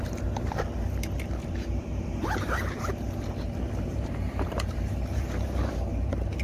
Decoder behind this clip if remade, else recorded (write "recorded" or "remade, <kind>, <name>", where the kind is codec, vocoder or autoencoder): remade, vocoder, BigVGAN v2